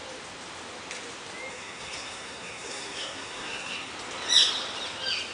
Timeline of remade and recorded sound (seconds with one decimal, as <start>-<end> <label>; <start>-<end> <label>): 0.0-1.5 recorded; 1.5-3.9 remade; 3.9-5.3 recorded